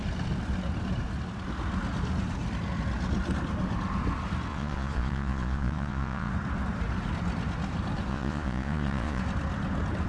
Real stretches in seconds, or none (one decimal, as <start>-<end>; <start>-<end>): 0.0-4.5; 6.3-8.1; 9.2-10.1